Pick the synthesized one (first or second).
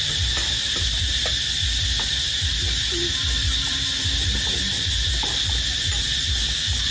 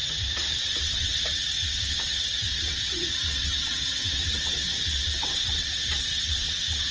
second